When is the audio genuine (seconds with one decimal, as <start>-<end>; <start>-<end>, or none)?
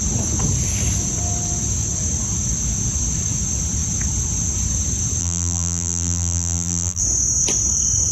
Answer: 0.0-5.2; 7.0-8.1